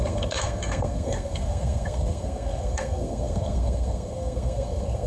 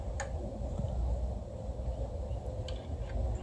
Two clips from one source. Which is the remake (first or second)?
first